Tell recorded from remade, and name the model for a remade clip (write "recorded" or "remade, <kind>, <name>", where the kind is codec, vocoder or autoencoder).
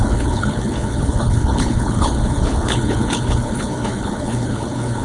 remade, codec, HILCodec